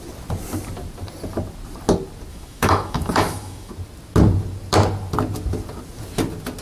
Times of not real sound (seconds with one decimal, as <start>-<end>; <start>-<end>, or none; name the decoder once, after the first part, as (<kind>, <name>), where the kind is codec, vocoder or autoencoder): 2.3-3.7 (autoencoder, DAC-VAE)